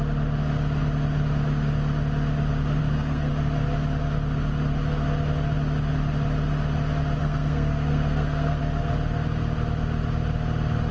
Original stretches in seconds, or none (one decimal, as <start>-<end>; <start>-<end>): 0.0-2.8; 3.3-7.2; 8.6-10.9